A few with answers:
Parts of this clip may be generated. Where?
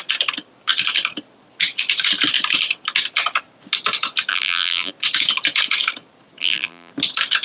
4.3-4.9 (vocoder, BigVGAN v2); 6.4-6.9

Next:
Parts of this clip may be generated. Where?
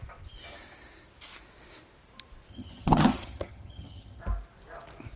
2.5-4.2 (vocoder, HiFi-GAN)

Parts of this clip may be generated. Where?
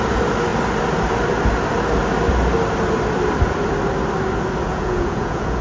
4.7-5.6 (vocoder, Vocos)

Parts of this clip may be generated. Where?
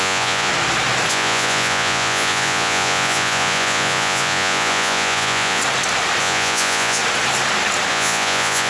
0.0-0.5 (vocoder, Vocos); 1.1-5.6; 6.2-7.0; 7.9-8.7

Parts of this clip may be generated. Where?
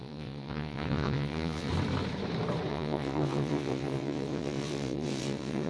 0.0-1.7 (vocoder, WaveNeXt); 2.7-5.7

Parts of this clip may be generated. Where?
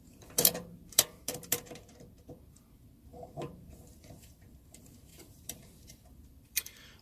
0.0-7.0 (vocoder, BigVGAN v2)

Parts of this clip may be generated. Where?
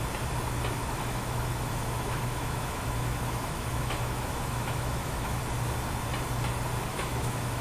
0.8-5.4 (autoencoder, DAC-VAE); 6.9-7.6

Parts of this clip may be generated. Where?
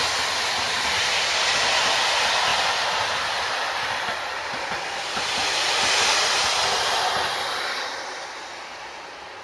none